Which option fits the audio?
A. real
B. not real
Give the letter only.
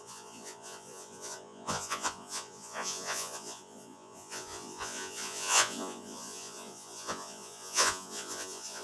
B